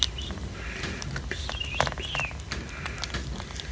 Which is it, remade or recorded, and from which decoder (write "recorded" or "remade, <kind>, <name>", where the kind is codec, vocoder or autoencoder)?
recorded